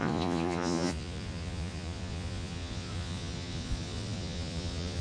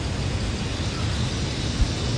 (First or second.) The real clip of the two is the second